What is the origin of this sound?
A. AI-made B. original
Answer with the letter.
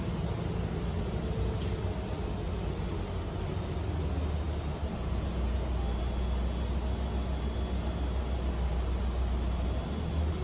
B